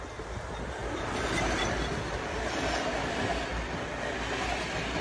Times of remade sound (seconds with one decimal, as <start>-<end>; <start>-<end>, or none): none